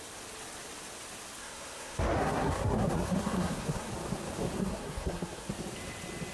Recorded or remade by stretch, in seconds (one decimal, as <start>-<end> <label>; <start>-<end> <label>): 0.0-1.4 recorded; 1.4-3.9 remade; 3.9-4.6 recorded; 4.6-5.5 remade; 5.5-6.3 recorded